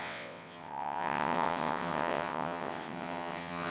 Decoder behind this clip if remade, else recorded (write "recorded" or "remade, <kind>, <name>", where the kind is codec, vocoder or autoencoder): remade, vocoder, WaveNeXt